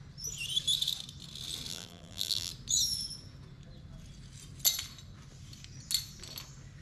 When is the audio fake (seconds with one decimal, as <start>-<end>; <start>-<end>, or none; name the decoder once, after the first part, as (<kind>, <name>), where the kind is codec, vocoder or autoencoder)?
1.7-2.5 (vocoder, BigVGAN v2)